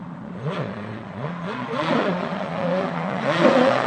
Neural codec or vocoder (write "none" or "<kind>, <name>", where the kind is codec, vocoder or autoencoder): vocoder, Vocos